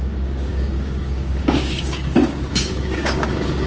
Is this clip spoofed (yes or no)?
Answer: yes